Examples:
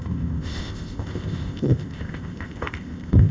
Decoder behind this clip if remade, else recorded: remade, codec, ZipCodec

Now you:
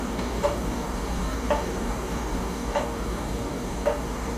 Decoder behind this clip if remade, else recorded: remade, codec, DAC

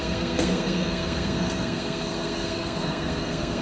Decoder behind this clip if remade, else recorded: remade, codec, SNAC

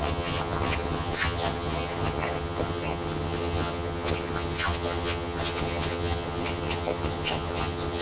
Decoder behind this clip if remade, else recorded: remade, vocoder, HiFi-GAN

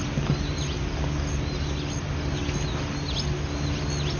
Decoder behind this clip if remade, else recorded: recorded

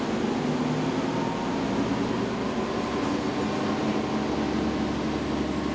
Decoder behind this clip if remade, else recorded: recorded